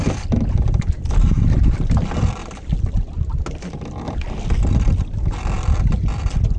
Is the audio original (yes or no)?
yes